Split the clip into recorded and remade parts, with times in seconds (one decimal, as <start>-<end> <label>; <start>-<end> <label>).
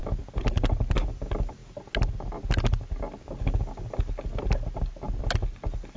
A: 0.0-6.0 recorded